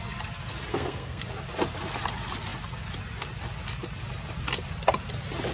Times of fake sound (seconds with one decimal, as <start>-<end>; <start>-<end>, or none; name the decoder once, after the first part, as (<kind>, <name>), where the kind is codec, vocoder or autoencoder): 0.7-1.2 (codec, SNAC)